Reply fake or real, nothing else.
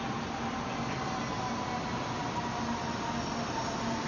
real